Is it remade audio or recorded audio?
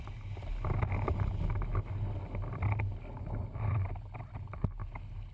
recorded